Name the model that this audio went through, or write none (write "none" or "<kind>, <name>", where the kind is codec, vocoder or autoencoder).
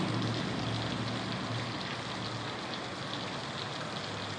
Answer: none